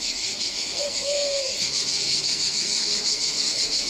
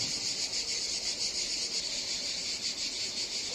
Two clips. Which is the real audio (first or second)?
second